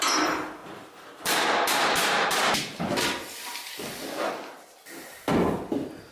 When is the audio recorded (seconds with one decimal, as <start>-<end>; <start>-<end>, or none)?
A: 0.0-6.1